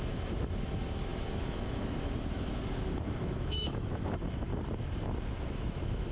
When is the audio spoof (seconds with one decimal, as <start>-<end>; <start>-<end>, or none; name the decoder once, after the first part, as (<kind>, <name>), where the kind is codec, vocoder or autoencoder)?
0.0-4.5 (autoencoder, DAC-VAE); 5.3-6.1